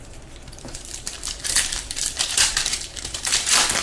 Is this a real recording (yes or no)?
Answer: no